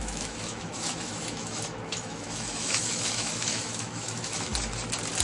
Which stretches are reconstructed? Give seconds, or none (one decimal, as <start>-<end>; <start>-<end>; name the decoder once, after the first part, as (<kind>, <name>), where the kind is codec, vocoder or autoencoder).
0.0-4.5 (autoencoder, DAC-VAE)